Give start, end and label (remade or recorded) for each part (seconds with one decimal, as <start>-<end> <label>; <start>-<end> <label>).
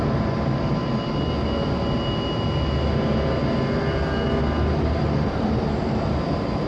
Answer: 0.0-0.8 remade; 0.8-4.8 recorded; 4.8-6.7 remade